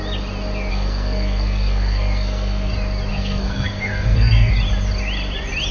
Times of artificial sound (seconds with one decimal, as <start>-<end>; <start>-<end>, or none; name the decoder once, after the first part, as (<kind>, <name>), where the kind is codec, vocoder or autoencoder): 0.7-2.7 (codec, SNAC); 3.1-4.5